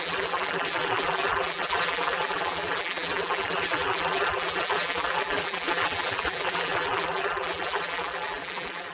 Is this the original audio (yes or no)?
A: no